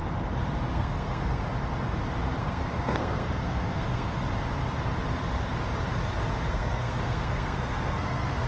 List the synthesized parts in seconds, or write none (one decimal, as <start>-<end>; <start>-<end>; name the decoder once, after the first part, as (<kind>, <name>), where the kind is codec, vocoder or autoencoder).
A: 0.7-1.5 (codec, SNAC); 2.4-4.2; 6.5-8.5